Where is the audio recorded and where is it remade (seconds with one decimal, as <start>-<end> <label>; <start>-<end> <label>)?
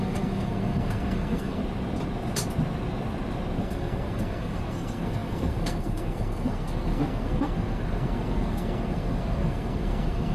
0.0-1.6 remade; 1.6-3.6 recorded; 3.6-10.3 remade